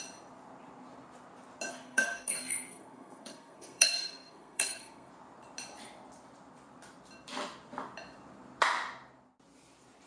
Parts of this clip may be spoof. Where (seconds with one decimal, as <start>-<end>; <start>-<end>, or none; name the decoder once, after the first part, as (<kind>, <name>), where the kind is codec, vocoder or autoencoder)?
1.7-5.1 (codec, SNAC)